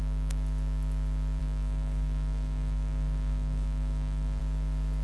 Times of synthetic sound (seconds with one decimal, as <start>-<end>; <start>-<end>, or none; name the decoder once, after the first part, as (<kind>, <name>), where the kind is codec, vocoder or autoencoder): 1.4-4.4 (codec, DAC)